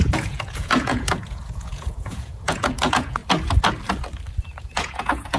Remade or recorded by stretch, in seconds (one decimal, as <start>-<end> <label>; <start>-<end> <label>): 0.0-3.2 remade; 3.2-4.6 recorded; 4.6-5.4 remade